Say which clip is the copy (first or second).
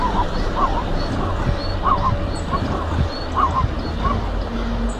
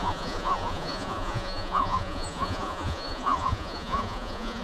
second